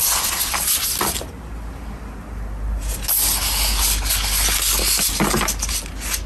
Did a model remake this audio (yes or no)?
no